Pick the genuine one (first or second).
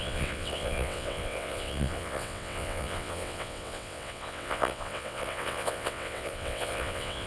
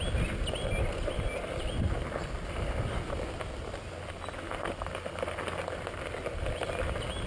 second